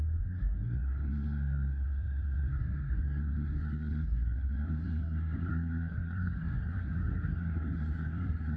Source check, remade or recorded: remade